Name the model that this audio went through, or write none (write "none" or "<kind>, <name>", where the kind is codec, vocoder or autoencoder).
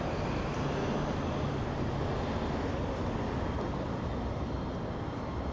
none